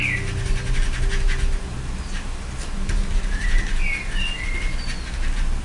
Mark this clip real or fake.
real